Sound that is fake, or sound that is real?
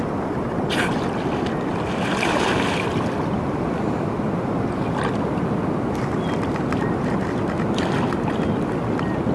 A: real